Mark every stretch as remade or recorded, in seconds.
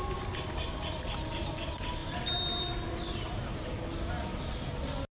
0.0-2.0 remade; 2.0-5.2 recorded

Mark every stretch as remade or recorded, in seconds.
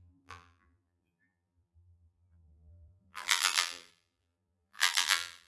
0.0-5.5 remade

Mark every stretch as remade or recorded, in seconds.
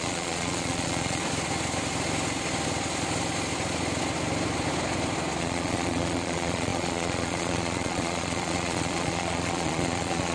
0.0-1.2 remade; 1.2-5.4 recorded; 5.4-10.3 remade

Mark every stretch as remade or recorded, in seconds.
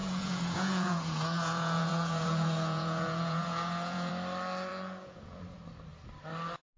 0.0-4.1 remade; 4.1-4.7 recorded; 4.7-5.4 remade; 5.4-6.8 recorded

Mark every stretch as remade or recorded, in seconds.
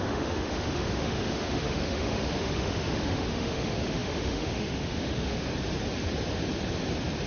0.0-5.5 remade; 5.5-7.3 recorded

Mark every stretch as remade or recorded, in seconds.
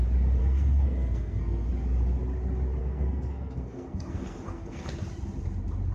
0.0-0.4 recorded; 0.4-1.7 remade; 1.7-2.8 recorded; 2.8-4.9 remade; 4.9-5.9 recorded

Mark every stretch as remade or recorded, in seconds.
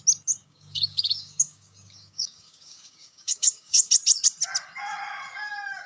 0.0-0.4 recorded; 0.4-3.9 remade; 3.9-5.9 recorded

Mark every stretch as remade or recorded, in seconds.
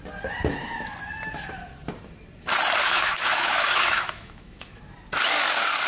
0.0-2.8 recorded; 2.8-4.8 remade; 4.8-5.9 recorded